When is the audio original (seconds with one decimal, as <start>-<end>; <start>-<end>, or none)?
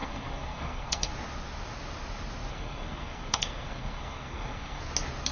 1.1-2.5; 4.8-5.3